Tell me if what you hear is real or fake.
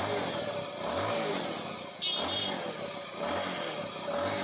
real